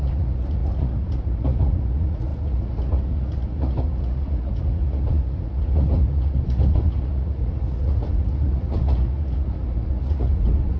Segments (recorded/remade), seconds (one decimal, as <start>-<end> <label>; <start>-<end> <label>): 0.0-10.8 remade